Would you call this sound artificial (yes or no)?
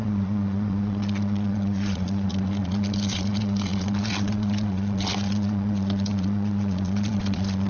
yes